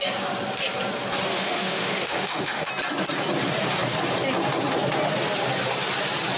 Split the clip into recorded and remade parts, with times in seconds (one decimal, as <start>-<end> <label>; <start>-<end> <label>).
0.0-1.3 recorded; 1.3-2.7 remade; 2.7-6.4 recorded